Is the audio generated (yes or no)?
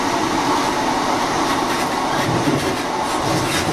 no